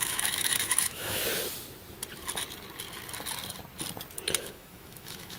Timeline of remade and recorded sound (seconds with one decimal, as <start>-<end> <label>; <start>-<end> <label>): 0.0-1.2 remade; 1.2-4.4 recorded; 4.4-5.4 remade

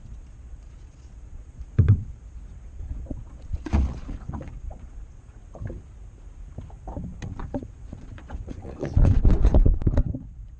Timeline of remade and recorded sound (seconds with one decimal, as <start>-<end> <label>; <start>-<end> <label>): 0.0-5.4 remade; 5.4-7.2 recorded; 7.2-10.6 remade

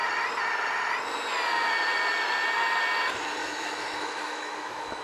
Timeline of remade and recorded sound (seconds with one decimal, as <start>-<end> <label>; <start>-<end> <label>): 0.0-3.4 recorded; 3.4-5.0 remade